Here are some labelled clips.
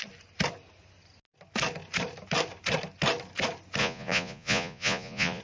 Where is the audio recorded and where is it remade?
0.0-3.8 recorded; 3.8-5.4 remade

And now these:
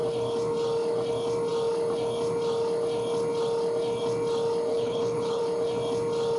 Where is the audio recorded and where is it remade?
0.0-4.7 recorded; 4.7-5.4 remade; 5.4-6.4 recorded

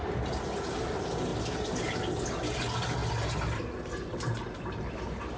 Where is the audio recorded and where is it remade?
0.0-5.4 recorded

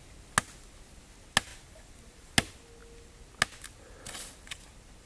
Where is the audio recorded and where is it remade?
0.0-1.5 recorded; 1.5-2.3 remade; 2.3-5.1 recorded

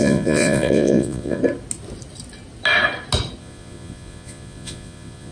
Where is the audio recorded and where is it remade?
0.0-1.4 remade; 1.4-3.4 recorded; 3.4-5.3 remade

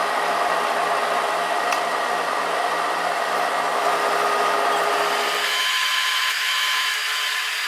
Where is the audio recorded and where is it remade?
0.0-5.5 recorded; 5.5-6.9 remade; 6.9-7.7 recorded

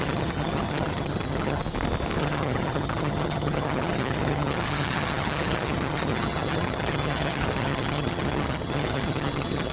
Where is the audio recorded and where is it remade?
0.0-1.6 remade; 1.6-2.2 recorded; 2.2-9.7 remade

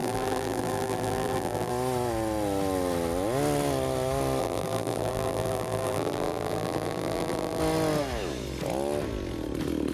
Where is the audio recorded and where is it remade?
0.0-1.7 remade; 1.7-4.4 recorded; 4.4-7.6 remade; 7.6-9.9 recorded